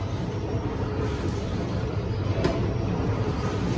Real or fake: real